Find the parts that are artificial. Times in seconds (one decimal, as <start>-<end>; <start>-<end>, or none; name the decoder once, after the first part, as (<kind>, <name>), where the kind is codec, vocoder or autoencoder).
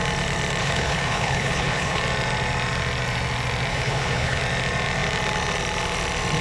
0.6-2.0 (codec, HILCodec); 3.7-4.4